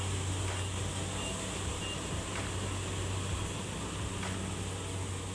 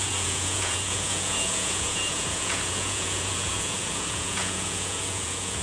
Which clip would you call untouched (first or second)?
first